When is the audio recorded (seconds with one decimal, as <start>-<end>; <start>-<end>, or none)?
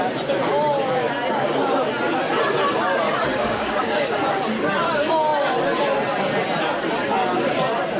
0.0-3.3; 4.2-8.0